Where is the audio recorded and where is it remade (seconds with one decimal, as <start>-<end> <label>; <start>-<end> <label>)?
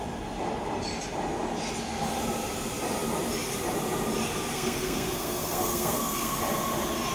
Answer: 0.0-4.5 recorded; 4.5-6.4 remade; 6.4-7.1 recorded